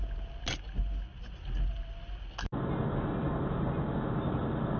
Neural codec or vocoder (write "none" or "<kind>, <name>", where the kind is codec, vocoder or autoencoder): none